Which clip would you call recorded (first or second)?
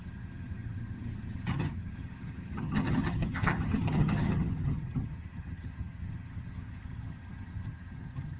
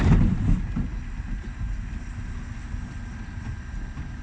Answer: second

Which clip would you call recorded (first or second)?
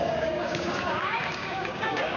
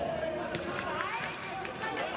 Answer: second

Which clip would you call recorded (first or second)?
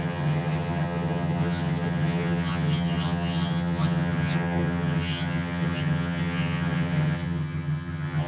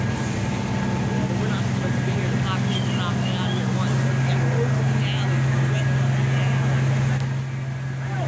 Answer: second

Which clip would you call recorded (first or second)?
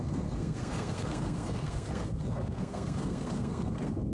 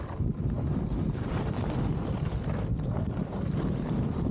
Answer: second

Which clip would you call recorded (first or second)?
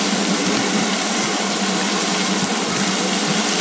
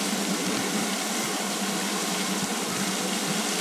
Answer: first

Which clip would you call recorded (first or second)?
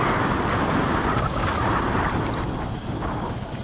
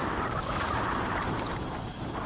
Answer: first